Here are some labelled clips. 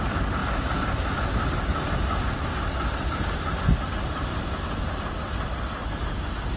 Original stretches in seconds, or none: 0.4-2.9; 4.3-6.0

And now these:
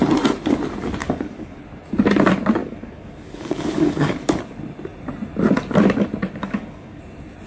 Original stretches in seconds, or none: 0.0-1.0; 1.6-2.6; 4.4-6.4; 7.0-7.5

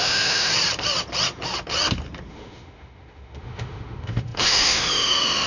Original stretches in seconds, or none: 0.5-2.3

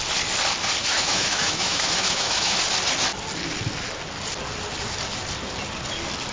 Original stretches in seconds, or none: 0.0-0.8; 2.6-6.3

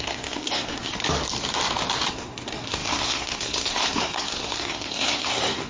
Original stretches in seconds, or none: 1.0-2.1

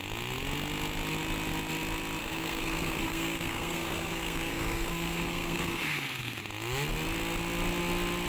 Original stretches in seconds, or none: 0.0-2.2; 6.4-8.3